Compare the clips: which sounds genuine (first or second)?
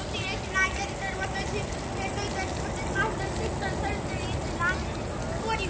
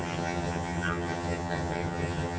first